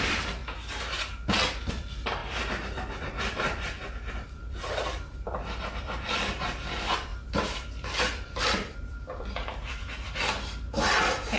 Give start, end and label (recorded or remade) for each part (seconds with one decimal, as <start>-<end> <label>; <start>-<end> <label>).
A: 0.0-0.4 remade; 0.4-1.7 recorded; 1.7-11.4 remade